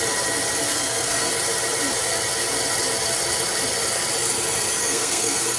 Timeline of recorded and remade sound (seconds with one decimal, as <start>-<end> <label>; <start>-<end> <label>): 0.0-0.7 recorded; 0.7-1.3 remade; 1.3-4.8 recorded; 4.8-5.6 remade